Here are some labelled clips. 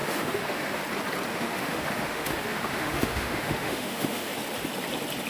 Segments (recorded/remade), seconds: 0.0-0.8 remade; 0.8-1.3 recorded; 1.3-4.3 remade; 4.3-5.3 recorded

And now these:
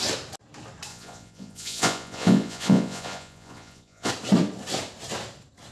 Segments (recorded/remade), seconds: 0.0-0.9 recorded; 0.9-4.1 remade; 4.1-5.7 recorded

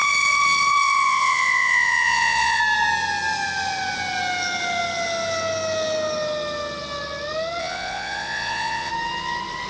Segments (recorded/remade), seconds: 0.0-2.6 remade; 2.6-7.6 recorded; 7.6-8.9 remade; 8.9-9.7 recorded

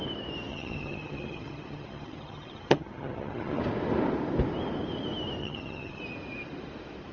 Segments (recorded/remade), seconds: 0.0-0.5 recorded; 0.5-3.6 remade; 3.6-5.4 recorded; 5.4-6.0 remade; 6.0-7.1 recorded

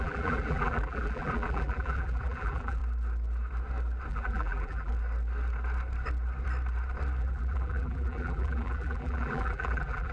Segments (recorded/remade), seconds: 0.0-2.8 remade; 2.8-4.1 recorded; 4.1-4.9 remade; 4.9-7.2 recorded; 7.2-10.1 remade

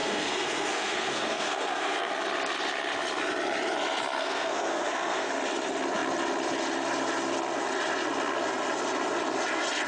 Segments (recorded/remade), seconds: 0.0-2.1 remade; 2.1-4.2 recorded; 4.2-5.3 remade; 5.3-9.9 recorded